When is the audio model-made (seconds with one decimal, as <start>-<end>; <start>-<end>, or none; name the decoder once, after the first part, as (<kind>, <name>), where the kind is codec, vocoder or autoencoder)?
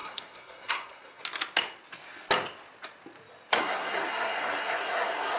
0.0-1.2 (codec, SNAC); 3.6-5.4